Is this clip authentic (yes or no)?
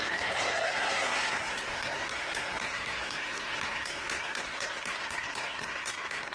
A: no